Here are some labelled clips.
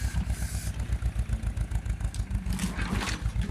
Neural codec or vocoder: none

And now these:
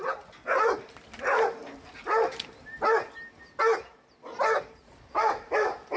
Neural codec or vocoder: none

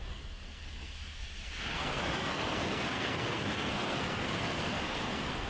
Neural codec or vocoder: codec, SNAC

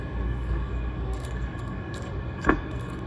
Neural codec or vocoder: codec, SNAC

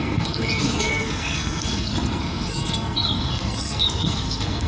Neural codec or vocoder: codec, SNAC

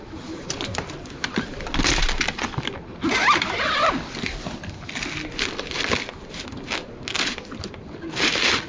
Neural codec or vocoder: none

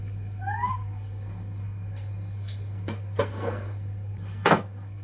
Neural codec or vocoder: codec, SNAC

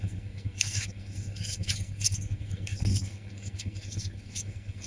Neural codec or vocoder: codec, SNAC